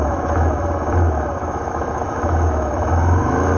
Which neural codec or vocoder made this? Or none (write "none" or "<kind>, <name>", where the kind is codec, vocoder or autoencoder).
autoencoder, DAC-VAE